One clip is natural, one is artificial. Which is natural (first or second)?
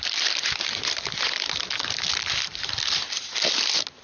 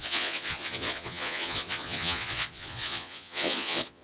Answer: first